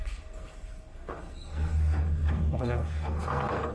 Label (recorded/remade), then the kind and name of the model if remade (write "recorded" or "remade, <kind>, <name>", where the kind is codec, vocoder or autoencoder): remade, codec, SNAC